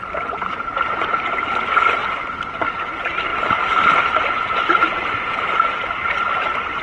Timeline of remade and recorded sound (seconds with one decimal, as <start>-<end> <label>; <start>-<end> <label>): 0.0-0.7 remade; 0.7-1.4 recorded; 1.4-2.0 remade; 2.0-2.7 recorded; 2.7-3.3 remade; 3.3-5.6 recorded; 5.6-6.8 remade